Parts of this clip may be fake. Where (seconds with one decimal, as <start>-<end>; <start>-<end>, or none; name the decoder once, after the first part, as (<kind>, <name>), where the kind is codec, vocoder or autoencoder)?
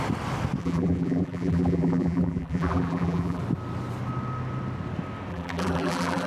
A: 0.6-3.4 (vocoder, BigVGAN v2); 5.3-6.3